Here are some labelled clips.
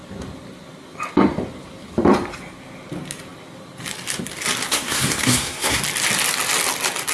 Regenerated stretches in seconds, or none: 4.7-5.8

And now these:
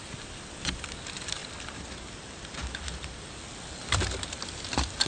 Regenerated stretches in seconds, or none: none

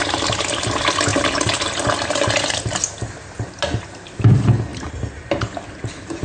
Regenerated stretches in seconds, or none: none